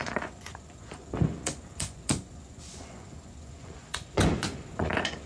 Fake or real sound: fake